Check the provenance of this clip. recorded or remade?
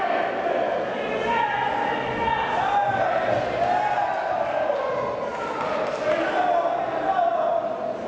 recorded